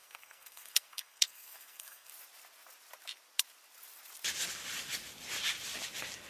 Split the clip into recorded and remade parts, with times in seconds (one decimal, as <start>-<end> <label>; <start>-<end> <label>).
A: 0.0-2.1 remade; 2.1-6.3 recorded